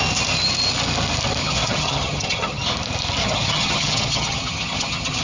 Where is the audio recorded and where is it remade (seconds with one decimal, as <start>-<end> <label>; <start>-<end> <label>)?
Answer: 0.0-1.4 recorded; 1.4-2.6 remade; 2.6-3.2 recorded; 3.2-5.2 remade